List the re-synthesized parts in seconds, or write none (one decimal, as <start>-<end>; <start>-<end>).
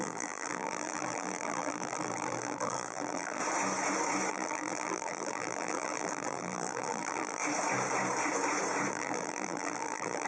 0.0-3.4; 4.3-7.4; 8.9-10.3